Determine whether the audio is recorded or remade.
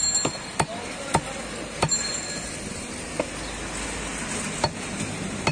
recorded